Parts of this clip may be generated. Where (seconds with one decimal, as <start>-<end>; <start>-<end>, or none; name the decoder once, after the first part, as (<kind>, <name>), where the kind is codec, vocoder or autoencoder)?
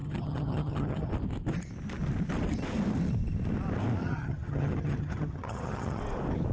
0.0-1.1 (vocoder, HiFi-GAN); 4.0-6.0